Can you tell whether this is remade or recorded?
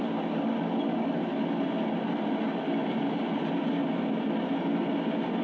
recorded